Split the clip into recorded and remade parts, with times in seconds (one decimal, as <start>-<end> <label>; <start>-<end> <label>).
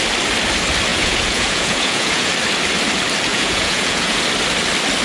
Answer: 0.0-0.9 recorded; 0.9-2.3 remade; 2.3-3.3 recorded; 3.3-4.2 remade; 4.2-5.0 recorded